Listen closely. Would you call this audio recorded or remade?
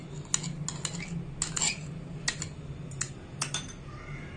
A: recorded